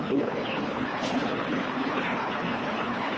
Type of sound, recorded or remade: remade